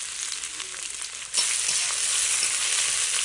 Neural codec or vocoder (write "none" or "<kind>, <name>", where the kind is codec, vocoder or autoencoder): none